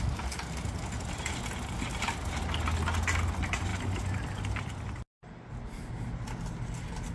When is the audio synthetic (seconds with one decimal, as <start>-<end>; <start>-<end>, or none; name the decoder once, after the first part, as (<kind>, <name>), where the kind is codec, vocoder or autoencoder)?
none